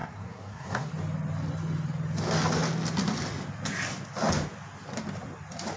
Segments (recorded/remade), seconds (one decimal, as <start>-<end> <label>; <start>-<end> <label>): 0.0-0.9 remade; 0.9-5.8 recorded